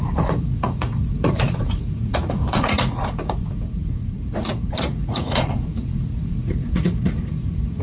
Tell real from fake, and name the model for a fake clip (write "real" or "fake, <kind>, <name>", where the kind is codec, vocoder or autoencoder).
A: fake, vocoder, Vocos